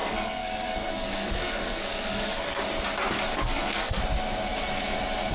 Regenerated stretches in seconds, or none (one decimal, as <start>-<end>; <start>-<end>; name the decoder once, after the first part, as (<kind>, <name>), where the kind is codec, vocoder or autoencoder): 0.0-2.6 (codec, SNAC); 3.4-4.0